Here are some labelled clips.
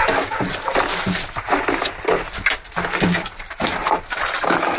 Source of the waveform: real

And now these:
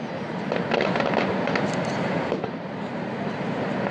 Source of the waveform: real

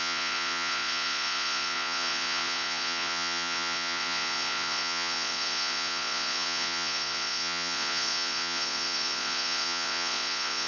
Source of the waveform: fake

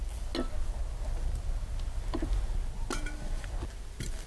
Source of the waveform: real